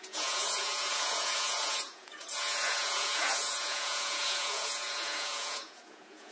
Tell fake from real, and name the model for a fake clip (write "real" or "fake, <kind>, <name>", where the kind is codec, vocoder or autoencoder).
fake, vocoder, Vocos